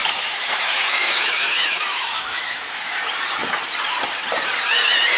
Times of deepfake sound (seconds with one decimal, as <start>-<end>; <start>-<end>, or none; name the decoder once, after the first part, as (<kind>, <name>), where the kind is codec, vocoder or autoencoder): 0.0-3.0 (autoencoder, DAC-VAE)